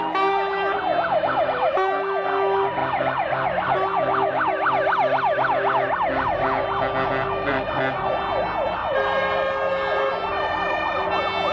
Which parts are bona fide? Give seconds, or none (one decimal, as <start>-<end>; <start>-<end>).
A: 0.0-11.5